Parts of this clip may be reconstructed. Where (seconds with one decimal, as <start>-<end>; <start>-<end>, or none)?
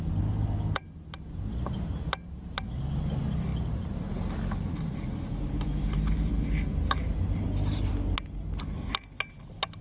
3.5-4.9